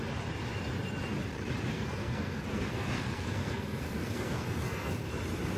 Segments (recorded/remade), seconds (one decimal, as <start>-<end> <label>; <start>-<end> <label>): 0.0-1.7 recorded; 1.7-5.1 remade; 5.1-5.6 recorded